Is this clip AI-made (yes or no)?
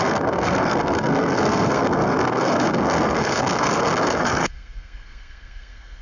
yes